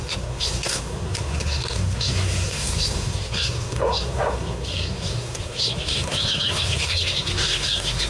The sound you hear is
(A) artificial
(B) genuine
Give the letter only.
A